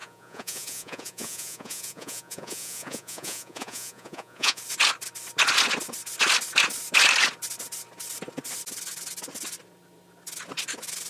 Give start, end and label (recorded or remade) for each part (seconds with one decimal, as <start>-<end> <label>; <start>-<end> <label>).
0.0-4.6 remade; 4.6-11.1 recorded